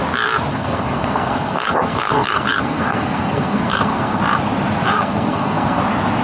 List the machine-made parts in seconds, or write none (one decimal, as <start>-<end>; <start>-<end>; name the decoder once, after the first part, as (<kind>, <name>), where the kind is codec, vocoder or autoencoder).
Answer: 0.5-4.2 (codec, SNAC); 4.9-5.8

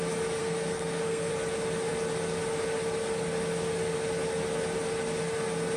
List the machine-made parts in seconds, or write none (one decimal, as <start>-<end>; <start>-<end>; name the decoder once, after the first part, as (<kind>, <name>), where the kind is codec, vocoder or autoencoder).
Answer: 0.4-1.3 (codec, SNAC)

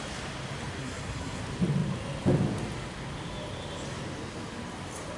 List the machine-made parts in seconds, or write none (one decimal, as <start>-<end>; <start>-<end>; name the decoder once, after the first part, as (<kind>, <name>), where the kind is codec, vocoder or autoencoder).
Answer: 0.8-1.4 (codec, SNAC)

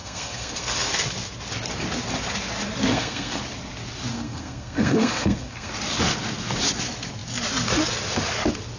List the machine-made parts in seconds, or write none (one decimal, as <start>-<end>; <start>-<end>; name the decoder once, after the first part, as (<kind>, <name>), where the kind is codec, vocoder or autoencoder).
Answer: 0.0-0.9 (codec, SNAC); 2.9-3.4; 4.1-5.7

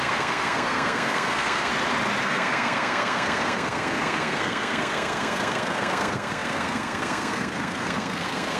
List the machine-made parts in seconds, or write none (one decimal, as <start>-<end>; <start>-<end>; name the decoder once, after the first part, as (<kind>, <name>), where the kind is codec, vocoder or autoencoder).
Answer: 0.0-1.7 (codec, SNAC); 2.2-8.6

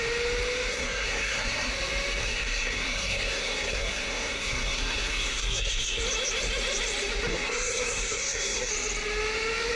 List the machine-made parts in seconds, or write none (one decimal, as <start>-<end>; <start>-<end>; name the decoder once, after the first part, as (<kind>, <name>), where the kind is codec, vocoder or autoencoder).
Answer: 0.7-1.7 (codec, SNAC); 2.2-6.0; 7.3-8.7

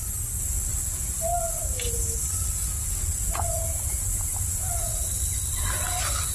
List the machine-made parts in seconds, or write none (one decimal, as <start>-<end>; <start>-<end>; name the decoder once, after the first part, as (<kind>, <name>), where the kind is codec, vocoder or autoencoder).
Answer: none